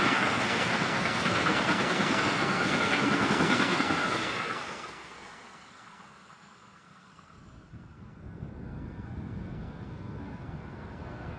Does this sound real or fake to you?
fake